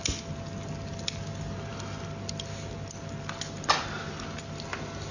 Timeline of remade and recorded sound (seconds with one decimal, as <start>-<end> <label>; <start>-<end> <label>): 0.0-5.1 recorded